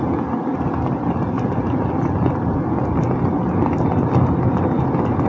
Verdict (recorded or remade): recorded